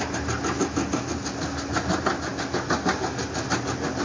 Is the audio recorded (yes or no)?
yes